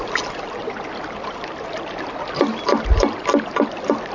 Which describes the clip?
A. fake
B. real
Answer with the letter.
B